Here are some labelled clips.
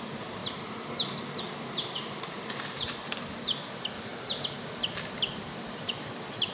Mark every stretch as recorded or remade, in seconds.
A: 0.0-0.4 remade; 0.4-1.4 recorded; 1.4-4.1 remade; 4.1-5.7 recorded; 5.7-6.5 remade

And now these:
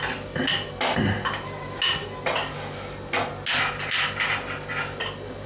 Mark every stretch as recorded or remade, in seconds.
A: 0.0-5.5 recorded

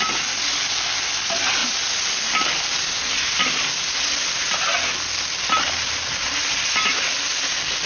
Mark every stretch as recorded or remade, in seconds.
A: 0.0-7.9 recorded

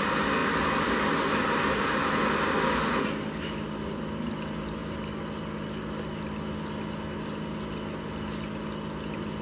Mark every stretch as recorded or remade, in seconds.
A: 0.0-9.4 recorded

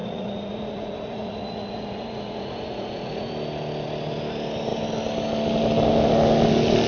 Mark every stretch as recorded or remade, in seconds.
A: 0.0-3.3 remade; 3.3-6.9 recorded

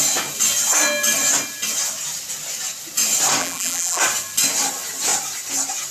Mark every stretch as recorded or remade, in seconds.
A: 0.0-3.4 recorded; 3.4-4.0 remade; 4.0-5.9 recorded

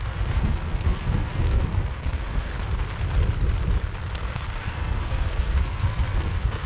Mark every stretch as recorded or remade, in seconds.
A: 0.0-2.5 remade; 2.5-4.2 recorded; 4.2-6.7 remade

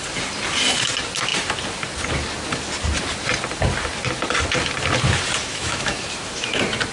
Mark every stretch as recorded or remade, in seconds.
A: 0.0-5.5 recorded; 5.5-6.0 remade; 6.0-6.9 recorded